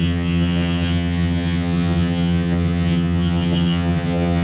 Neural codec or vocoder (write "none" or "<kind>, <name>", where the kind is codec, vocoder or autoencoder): vocoder, HiFi-GAN